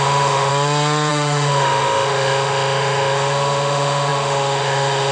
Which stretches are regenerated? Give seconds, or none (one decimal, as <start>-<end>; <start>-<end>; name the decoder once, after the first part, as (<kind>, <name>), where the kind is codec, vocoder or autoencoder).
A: 0.0-0.5 (autoencoder, DAC-VAE); 1.1-5.1